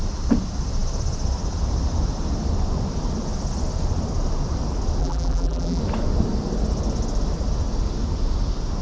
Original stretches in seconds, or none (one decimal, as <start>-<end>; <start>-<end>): 0.0-5.0; 5.8-8.8